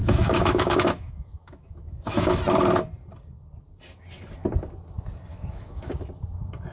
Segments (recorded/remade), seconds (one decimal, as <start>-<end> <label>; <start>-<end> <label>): 0.0-2.4 remade; 2.4-5.3 recorded; 5.3-6.0 remade; 6.0-6.7 recorded